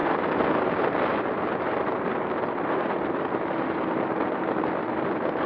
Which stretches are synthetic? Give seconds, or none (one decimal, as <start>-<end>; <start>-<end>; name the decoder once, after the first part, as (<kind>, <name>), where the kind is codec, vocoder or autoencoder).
none